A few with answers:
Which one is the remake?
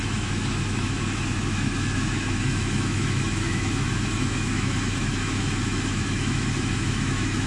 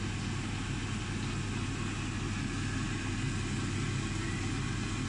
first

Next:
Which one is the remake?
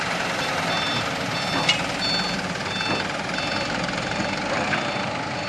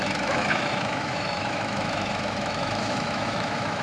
second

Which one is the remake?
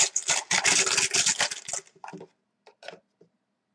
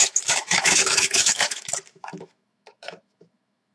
second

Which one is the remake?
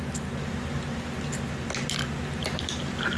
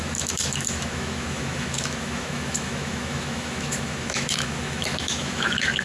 second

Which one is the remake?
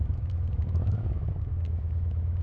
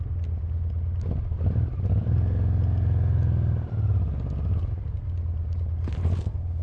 first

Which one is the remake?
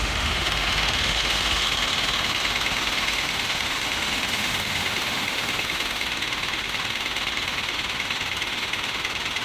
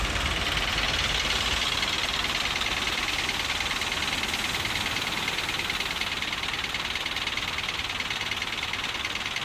first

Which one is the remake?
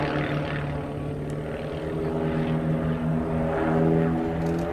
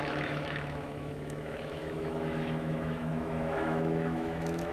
second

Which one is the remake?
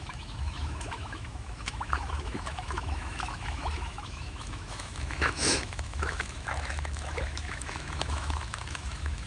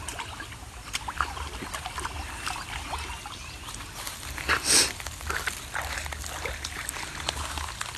first